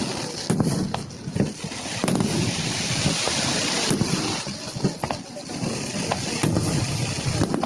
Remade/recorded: recorded